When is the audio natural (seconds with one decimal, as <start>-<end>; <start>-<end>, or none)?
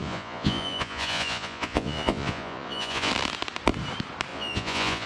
3.1-4.3